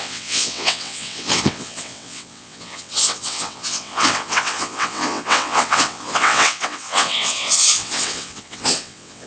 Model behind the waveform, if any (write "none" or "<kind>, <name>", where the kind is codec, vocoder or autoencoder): vocoder, WaveNeXt